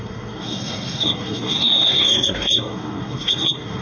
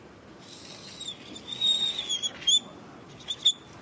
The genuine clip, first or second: second